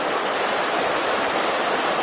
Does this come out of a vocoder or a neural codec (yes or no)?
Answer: no